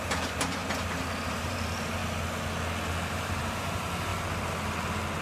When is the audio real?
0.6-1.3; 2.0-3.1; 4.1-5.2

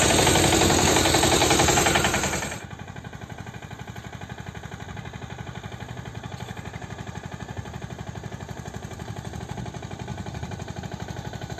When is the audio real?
0.0-1.4; 3.5-6.1; 9.4-10.1; 10.8-11.6

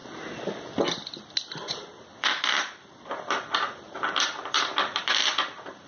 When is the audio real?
0.0-2.1

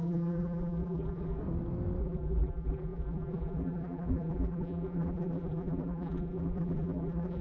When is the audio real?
1.4-2.0

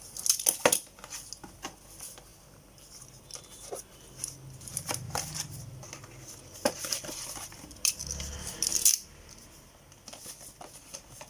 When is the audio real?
0.0-4.7; 5.3-8.7; 9.3-11.3

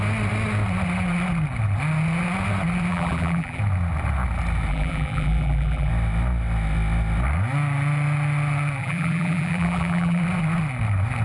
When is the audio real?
0.0-2.9; 3.6-4.7; 5.9-8.8; 10.2-11.2

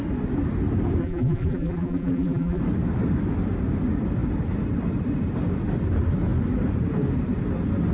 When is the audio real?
0.0-1.0; 2.6-7.9

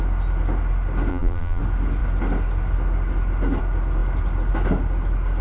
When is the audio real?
0.0-1.1; 1.6-5.4